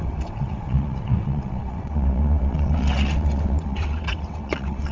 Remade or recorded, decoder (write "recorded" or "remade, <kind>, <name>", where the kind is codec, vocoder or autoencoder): remade, vocoder, WaveNeXt